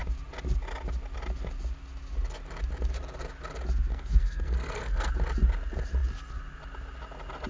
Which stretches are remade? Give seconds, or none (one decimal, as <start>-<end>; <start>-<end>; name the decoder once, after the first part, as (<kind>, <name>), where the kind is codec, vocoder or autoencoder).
3.9-5.1 (codec, SNAC)